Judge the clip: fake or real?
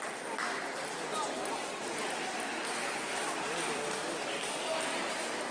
real